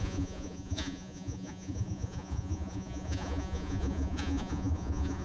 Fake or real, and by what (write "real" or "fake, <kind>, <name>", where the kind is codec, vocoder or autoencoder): fake, vocoder, Vocos